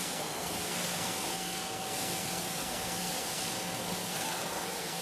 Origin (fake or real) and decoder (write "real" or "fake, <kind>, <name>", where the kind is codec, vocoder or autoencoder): fake, codec, SNAC